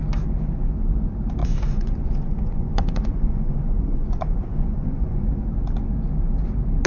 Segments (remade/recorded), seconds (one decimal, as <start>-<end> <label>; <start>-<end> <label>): 0.0-1.4 recorded; 1.4-5.4 remade; 5.4-6.9 recorded

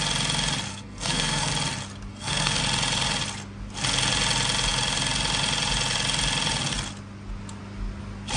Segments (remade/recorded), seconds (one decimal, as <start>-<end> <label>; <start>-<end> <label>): 0.0-0.7 recorded; 0.7-1.5 remade; 1.5-2.1 recorded; 2.1-2.6 remade; 2.6-8.4 recorded

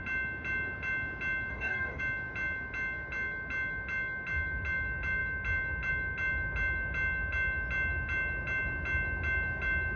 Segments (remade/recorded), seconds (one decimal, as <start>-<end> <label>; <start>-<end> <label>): 0.0-1.5 recorded; 1.5-2.0 remade; 2.0-10.0 recorded

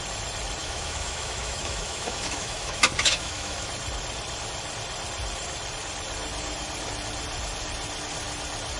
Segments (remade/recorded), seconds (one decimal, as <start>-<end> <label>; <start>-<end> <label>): 0.0-0.6 recorded; 0.6-3.7 remade; 3.7-8.8 recorded

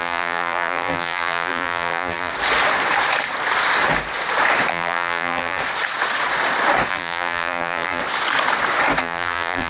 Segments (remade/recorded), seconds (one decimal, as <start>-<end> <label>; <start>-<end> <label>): 0.0-2.3 remade; 2.3-4.7 recorded; 4.7-5.6 remade; 5.6-6.9 recorded; 6.9-8.0 remade; 8.0-9.0 recorded; 9.0-9.7 remade